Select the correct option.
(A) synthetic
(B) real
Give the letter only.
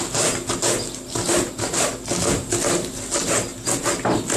B